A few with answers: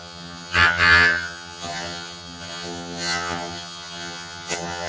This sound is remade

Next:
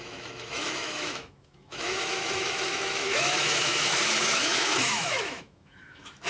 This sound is remade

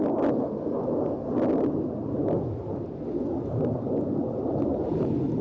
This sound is recorded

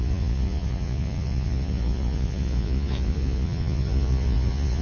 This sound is remade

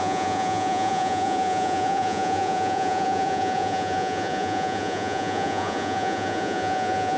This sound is remade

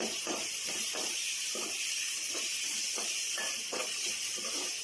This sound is recorded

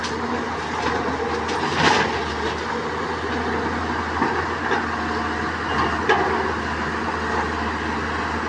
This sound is recorded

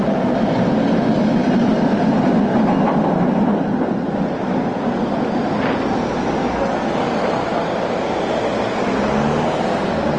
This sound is recorded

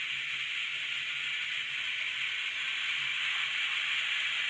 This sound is recorded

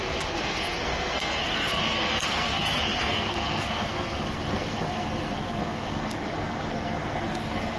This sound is remade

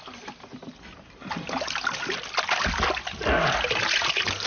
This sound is recorded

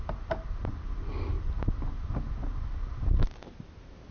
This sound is recorded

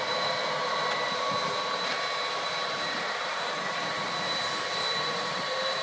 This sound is remade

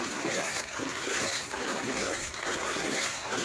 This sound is remade